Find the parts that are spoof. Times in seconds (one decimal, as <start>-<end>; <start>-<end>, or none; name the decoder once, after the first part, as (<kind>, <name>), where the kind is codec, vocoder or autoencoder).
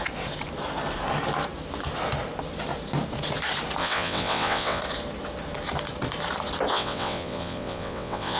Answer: 3.8-4.8 (vocoder, WaveNeXt); 6.7-8.4